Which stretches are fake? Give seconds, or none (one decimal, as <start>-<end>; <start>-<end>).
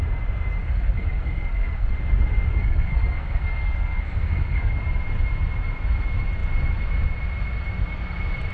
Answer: 0.6-1.9; 2.5-4.7